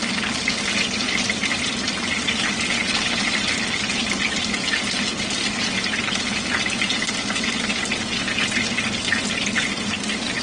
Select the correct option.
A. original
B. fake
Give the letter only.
A